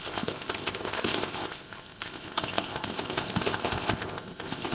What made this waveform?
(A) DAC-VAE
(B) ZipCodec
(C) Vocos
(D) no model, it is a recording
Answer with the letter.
B